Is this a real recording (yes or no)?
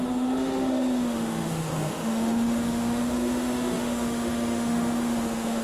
no